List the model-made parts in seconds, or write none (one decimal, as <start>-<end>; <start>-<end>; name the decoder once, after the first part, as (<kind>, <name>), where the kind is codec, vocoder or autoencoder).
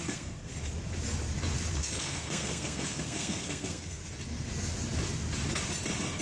0.0-0.5 (codec, SNAC); 1.7-4.0